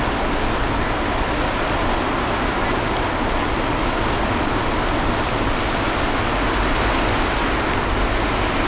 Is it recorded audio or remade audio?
recorded